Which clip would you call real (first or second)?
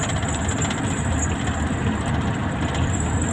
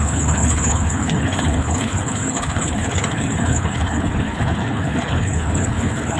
first